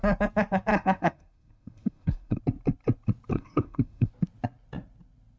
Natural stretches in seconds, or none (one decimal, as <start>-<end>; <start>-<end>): 0.0-0.7; 2.4-3.3; 4.1-5.4